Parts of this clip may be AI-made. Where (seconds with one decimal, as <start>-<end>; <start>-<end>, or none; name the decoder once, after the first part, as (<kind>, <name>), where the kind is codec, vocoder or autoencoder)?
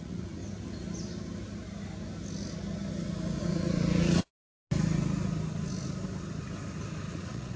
0.0-0.4 (vocoder, Vocos); 3.4-4.6; 7.1-7.6